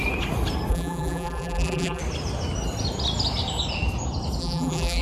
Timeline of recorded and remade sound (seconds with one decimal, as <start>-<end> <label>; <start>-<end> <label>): 0.0-0.7 recorded; 0.7-2.0 remade; 2.0-4.4 recorded; 4.4-5.0 remade